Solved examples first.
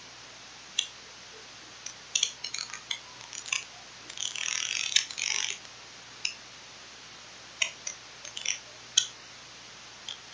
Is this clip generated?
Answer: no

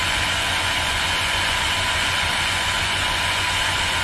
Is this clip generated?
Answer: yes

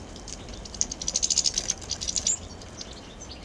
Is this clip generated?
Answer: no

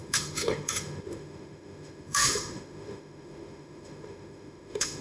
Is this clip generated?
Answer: yes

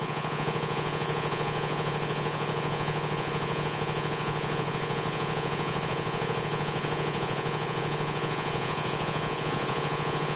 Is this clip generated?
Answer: yes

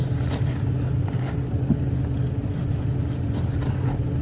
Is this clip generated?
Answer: no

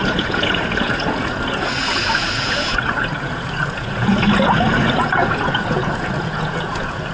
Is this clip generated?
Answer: yes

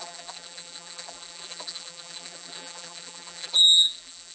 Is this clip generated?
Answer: yes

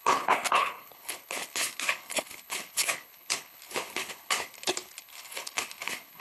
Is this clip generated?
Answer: yes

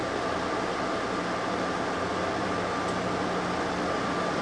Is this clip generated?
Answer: no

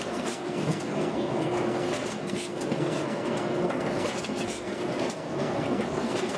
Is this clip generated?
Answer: yes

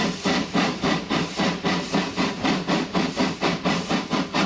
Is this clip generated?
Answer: no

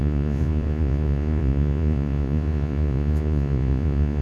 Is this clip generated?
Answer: yes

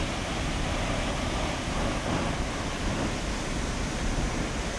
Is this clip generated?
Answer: no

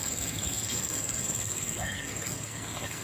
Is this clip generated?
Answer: yes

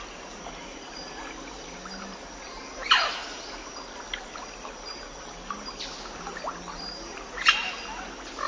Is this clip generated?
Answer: no